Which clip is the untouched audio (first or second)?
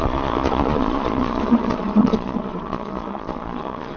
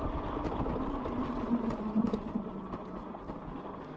second